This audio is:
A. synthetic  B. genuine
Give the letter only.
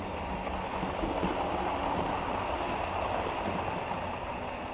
B